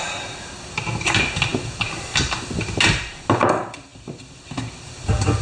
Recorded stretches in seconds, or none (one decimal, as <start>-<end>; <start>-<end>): 0.0-5.4